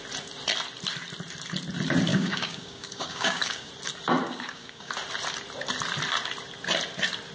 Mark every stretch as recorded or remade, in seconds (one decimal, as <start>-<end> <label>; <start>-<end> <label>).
0.0-2.1 recorded; 2.1-3.7 remade; 3.7-4.2 recorded; 4.2-4.9 remade; 4.9-7.3 recorded